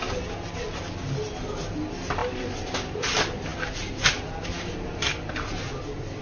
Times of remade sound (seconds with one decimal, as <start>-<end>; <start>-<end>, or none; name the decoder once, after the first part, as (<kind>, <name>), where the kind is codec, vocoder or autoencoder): none